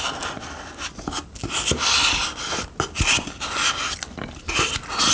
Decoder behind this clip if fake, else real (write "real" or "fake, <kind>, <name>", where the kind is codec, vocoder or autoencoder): real